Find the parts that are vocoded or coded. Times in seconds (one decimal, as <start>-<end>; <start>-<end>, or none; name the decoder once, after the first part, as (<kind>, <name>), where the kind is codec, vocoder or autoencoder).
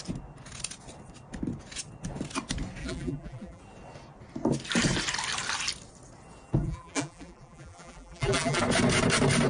2.8-3.6 (vocoder, BigVGAN v2); 6.6-8.6